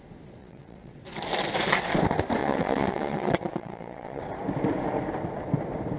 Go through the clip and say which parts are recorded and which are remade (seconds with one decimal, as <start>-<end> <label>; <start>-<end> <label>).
0.0-0.4 recorded; 0.4-1.0 remade; 1.0-2.4 recorded; 2.4-4.2 remade; 4.2-6.0 recorded